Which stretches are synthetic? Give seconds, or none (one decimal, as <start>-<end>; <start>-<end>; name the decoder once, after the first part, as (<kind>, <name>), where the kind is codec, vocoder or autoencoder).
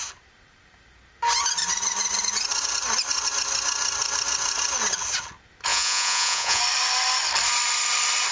5.7-6.6 (vocoder, Vocos)